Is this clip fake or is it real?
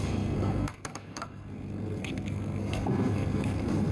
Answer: fake